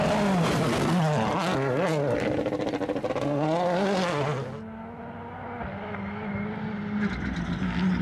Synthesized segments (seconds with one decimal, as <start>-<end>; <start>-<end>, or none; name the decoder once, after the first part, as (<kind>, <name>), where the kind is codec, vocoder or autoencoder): none